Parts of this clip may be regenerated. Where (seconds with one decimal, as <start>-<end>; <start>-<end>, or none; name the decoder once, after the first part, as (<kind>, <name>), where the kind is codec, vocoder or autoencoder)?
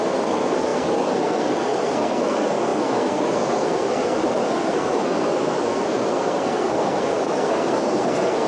0.0-8.5 (codec, SNAC)